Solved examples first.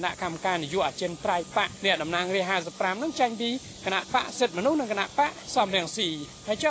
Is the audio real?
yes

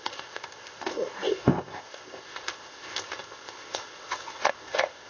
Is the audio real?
no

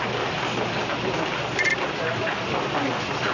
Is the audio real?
yes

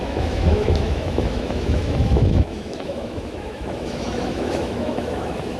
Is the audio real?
no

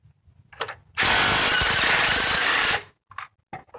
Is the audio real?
yes